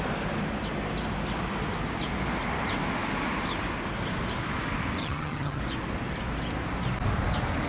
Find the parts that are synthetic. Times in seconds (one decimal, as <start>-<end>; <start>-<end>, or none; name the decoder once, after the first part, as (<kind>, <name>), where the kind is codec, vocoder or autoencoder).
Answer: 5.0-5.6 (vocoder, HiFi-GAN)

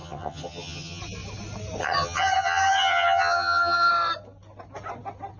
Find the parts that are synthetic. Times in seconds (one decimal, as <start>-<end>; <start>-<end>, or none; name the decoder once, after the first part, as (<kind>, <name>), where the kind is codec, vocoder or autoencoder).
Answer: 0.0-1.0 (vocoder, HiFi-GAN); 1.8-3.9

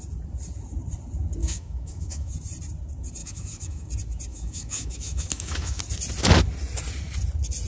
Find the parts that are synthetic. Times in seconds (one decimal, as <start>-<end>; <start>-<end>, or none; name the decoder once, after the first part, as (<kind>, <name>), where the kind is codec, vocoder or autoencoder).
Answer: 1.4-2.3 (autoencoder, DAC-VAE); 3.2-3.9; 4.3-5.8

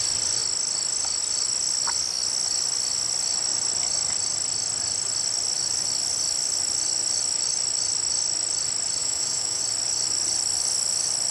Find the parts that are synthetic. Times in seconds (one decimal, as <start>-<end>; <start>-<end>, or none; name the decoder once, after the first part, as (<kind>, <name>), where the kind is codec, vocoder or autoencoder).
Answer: 9.0-9.6 (autoencoder, DAC-VAE)

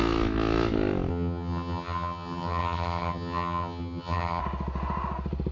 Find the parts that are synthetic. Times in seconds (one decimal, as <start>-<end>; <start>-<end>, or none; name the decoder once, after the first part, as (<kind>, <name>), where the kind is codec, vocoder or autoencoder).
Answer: 1.1-4.4 (vocoder, HiFi-GAN)

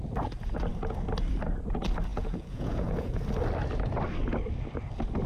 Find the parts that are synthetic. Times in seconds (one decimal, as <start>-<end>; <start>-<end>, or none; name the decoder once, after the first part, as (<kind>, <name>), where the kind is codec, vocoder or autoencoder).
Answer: 2.1-3.2 (vocoder, Vocos)

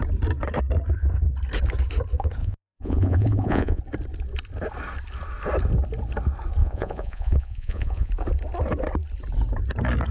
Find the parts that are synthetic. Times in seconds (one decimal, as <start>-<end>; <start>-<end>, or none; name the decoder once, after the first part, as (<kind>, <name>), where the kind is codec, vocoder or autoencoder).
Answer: 2.4-3.8 (vocoder, Vocos); 6.6-8.1

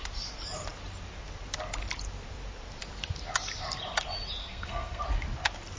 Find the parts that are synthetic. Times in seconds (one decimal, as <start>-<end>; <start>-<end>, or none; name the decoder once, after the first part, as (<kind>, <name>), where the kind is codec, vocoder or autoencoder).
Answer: 4.4-5.0 (codec, SNAC)